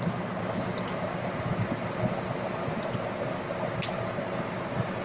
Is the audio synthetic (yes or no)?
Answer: no